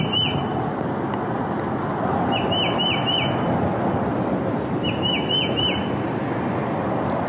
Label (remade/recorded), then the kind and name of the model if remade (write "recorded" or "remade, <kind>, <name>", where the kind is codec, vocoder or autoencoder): recorded